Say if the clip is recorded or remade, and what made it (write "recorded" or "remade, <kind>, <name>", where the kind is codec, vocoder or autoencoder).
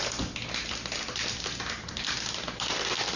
recorded